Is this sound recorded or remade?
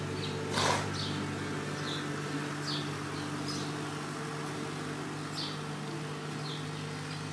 recorded